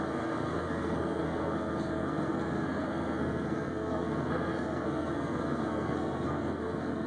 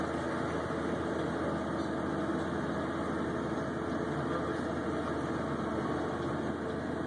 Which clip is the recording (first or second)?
second